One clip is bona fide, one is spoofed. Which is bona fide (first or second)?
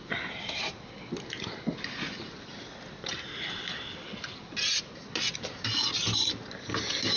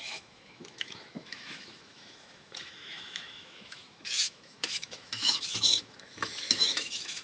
first